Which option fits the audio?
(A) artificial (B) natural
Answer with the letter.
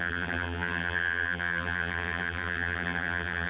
A